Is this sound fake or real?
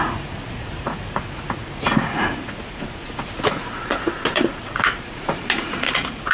fake